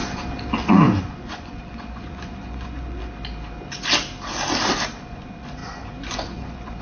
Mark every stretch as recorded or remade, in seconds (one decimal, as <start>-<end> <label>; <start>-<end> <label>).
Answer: 0.0-0.7 recorded; 0.7-3.0 remade; 3.0-5.0 recorded; 5.0-6.8 remade